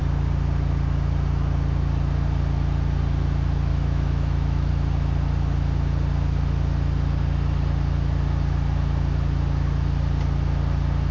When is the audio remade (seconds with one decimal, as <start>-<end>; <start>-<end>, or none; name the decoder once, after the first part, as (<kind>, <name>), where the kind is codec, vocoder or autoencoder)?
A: 3.7-4.7 (autoencoder, DAC-VAE)